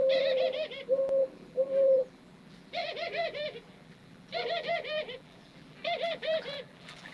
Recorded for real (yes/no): no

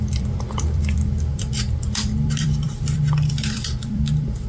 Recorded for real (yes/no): no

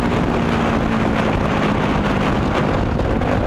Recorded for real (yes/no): yes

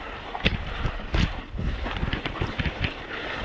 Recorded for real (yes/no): no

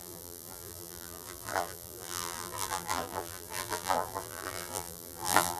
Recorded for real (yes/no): no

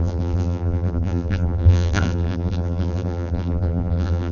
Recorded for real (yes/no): no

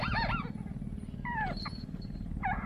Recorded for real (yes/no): yes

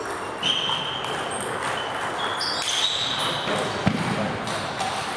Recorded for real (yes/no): yes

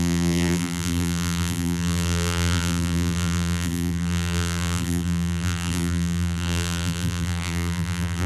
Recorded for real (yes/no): no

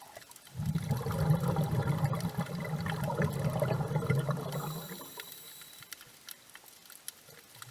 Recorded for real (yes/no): yes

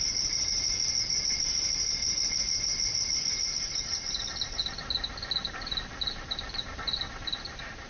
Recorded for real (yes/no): yes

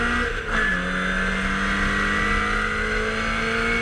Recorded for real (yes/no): yes